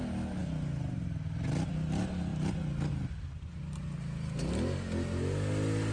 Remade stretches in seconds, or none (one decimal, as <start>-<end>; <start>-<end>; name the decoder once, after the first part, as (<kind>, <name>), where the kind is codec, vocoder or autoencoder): none